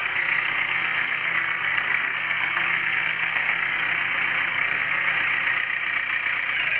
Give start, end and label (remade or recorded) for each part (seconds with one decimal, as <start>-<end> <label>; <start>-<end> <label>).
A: 0.0-3.9 remade; 3.9-4.5 recorded; 4.5-5.1 remade; 5.1-6.8 recorded